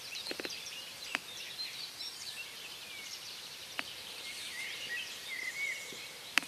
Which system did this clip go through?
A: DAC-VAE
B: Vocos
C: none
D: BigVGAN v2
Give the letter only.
D